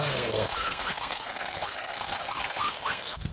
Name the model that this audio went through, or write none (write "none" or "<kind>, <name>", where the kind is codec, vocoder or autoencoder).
codec, SNAC